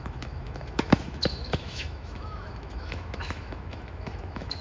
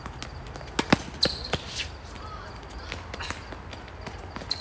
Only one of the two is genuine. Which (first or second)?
second